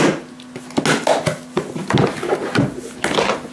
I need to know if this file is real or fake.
real